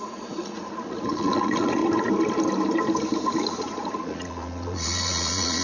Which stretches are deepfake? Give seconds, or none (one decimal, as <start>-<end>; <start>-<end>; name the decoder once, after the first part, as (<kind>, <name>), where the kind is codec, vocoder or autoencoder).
0.0-1.8 (vocoder, Vocos); 3.3-5.6